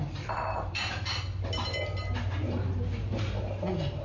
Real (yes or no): yes